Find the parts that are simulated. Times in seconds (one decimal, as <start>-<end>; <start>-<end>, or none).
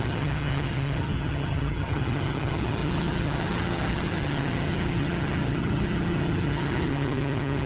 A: 0.0-7.7